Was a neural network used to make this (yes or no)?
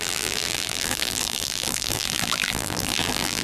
yes